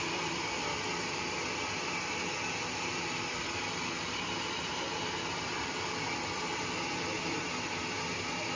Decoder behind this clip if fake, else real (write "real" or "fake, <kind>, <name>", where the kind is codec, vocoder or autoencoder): real